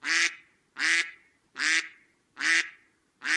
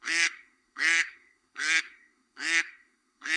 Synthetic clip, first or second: second